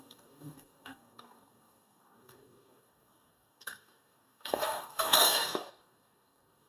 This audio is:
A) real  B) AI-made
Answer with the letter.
B